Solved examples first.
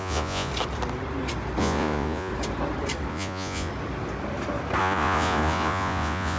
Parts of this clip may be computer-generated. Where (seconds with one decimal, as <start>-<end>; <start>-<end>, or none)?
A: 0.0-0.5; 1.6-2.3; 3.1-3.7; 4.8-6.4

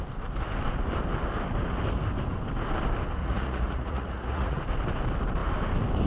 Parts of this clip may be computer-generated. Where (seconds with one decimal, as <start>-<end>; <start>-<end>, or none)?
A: 3.2-4.6

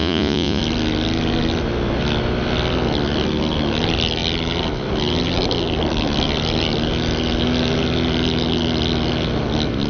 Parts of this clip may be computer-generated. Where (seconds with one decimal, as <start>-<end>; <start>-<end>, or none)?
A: 0.0-0.6